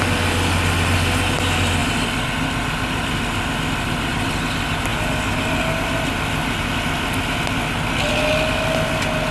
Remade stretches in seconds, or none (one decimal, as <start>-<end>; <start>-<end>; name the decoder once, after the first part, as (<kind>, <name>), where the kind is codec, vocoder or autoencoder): none

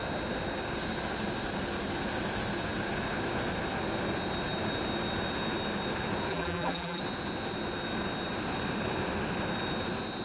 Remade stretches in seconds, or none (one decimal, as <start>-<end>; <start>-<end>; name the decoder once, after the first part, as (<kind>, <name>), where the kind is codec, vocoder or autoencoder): 6.3-7.0 (vocoder, BigVGAN v2)

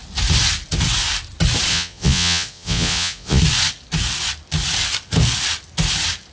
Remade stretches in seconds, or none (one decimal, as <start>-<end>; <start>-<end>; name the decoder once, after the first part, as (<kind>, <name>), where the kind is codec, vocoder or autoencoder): 1.7-3.4 (vocoder, Vocos)

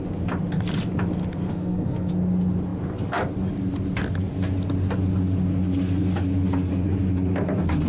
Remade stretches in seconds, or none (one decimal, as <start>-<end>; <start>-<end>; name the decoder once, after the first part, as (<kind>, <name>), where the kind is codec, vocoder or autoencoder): 1.3-2.1 (codec, SNAC)